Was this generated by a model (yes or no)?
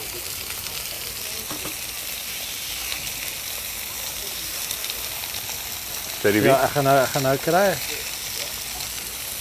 no